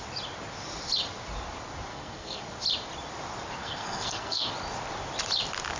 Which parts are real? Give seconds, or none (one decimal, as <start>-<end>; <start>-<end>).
0.0-1.9; 2.4-3.6; 4.5-5.8